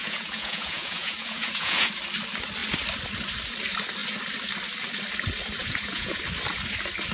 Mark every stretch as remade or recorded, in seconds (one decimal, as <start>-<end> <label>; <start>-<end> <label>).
0.0-1.9 remade; 1.9-5.6 recorded; 5.6-6.2 remade; 6.2-7.1 recorded